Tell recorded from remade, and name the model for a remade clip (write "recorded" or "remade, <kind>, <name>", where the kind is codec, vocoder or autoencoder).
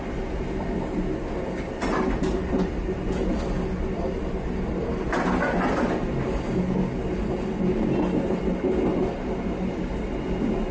recorded